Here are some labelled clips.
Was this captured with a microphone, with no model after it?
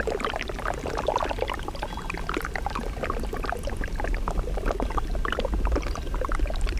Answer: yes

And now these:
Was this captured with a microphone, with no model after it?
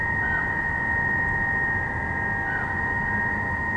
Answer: yes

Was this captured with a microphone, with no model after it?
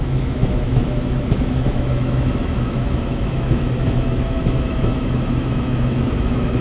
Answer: no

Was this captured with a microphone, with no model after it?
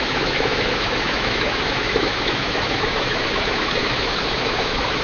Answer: no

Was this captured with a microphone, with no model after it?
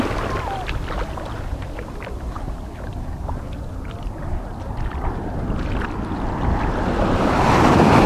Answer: yes